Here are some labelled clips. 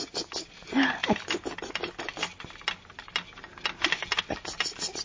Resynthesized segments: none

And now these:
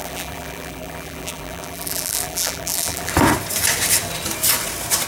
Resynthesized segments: 0.0-3.1

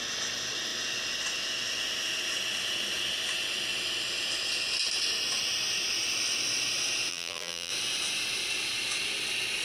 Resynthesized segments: 7.1-7.7

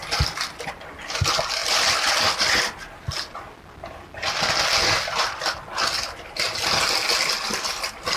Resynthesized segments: none

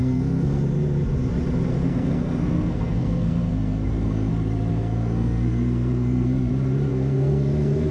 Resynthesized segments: 0.0-0.6; 1.7-4.3; 4.7-6.5; 6.9-7.9